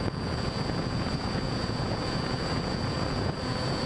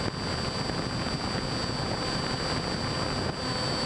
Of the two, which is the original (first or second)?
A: second